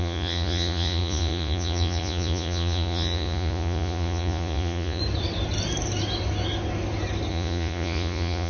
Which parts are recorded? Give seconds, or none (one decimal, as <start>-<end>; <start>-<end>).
5.0-7.3